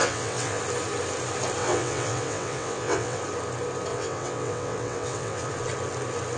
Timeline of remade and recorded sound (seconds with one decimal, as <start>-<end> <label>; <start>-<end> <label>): 0.0-0.6 remade; 0.6-1.6 recorded; 1.6-3.2 remade; 3.2-3.9 recorded; 3.9-5.5 remade; 5.5-6.4 recorded